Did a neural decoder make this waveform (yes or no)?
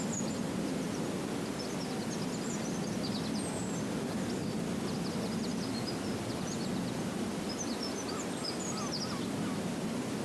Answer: no